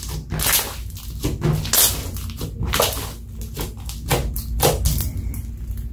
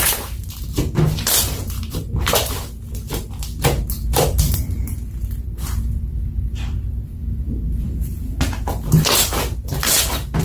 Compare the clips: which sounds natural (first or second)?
first